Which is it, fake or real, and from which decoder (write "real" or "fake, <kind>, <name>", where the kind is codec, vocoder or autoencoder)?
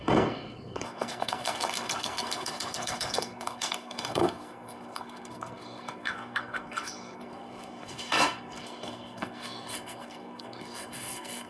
fake, codec, SNAC